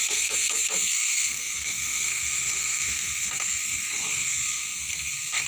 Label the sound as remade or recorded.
remade